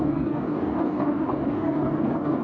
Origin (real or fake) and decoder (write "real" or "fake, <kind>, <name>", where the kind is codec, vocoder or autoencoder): fake, codec, DAC